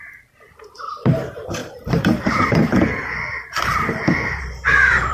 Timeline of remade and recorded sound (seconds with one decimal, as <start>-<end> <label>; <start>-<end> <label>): 0.0-1.6 recorded; 1.6-5.1 remade